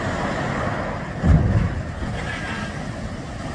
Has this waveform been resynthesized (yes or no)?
no